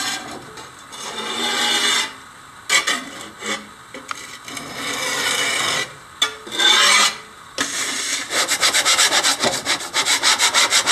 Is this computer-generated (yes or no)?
no